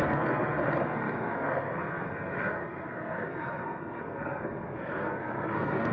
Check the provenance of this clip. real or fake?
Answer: fake